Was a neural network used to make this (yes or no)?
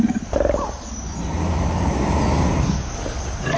no